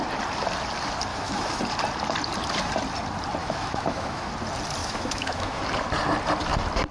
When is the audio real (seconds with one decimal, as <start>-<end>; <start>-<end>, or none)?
0.0-1.1; 1.6-3.4; 4.3-4.8; 5.6-6.9